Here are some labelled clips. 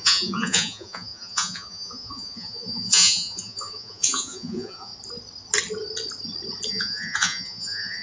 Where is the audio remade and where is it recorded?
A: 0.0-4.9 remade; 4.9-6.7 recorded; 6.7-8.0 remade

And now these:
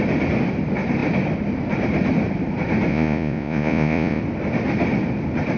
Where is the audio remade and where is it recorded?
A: 0.0-2.9 recorded; 2.9-4.2 remade; 4.2-5.6 recorded

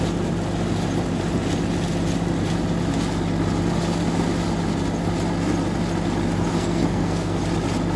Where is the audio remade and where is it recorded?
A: 0.0-6.5 recorded; 6.5-7.4 remade; 7.4-8.0 recorded